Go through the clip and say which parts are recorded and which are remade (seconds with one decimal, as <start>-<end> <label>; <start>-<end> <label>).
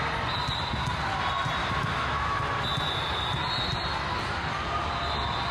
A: 0.0-1.6 recorded; 1.6-2.4 remade; 2.4-5.5 recorded